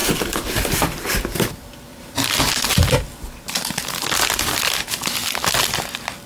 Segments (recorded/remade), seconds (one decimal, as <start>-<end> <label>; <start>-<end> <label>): 0.0-2.0 remade; 2.0-6.3 recorded